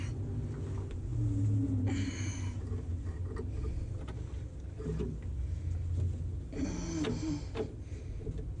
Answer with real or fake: real